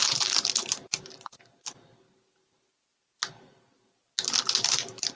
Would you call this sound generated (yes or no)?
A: no